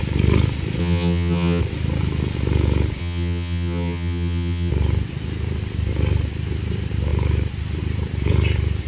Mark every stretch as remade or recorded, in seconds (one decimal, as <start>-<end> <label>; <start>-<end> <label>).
0.0-0.8 recorded; 0.8-1.6 remade; 1.6-3.0 recorded; 3.0-4.7 remade; 4.7-8.9 recorded

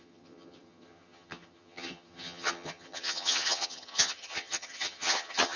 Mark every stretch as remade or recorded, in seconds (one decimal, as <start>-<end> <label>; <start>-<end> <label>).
0.0-5.6 remade